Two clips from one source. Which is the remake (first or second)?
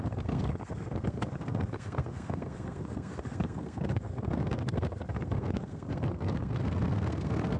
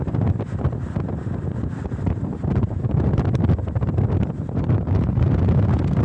first